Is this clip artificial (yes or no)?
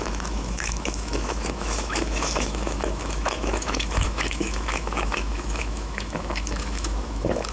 yes